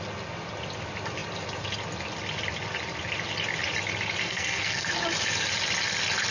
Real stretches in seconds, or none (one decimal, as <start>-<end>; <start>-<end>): 0.0-4.2; 4.9-6.3